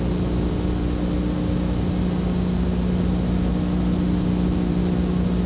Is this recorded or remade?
recorded